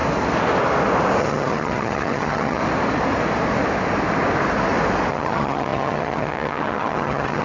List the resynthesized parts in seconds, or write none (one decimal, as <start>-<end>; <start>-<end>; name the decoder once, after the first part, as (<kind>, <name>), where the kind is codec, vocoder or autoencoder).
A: 1.2-2.6 (vocoder, HiFi-GAN); 5.1-7.4